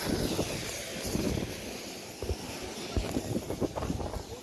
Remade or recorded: recorded